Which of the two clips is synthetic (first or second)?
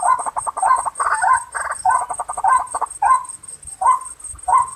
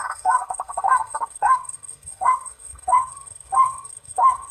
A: second